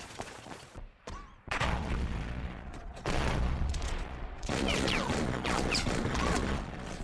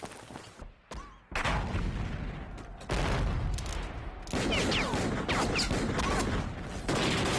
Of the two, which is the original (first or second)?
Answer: second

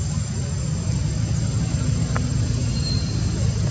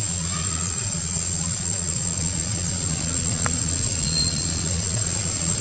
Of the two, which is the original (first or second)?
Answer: first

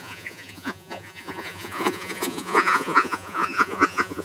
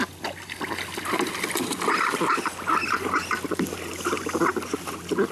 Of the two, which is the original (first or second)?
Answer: second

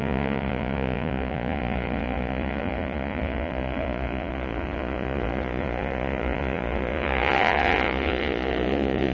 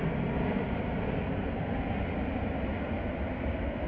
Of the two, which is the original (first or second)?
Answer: second